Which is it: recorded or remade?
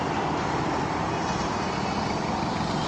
recorded